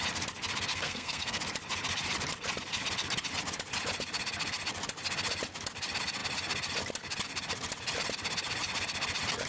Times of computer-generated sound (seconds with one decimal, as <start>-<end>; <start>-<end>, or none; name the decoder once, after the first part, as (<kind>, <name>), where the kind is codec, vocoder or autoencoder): 0.7-1.4 (codec, SNAC)